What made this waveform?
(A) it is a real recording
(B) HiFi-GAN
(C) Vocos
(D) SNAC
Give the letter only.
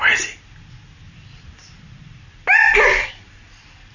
A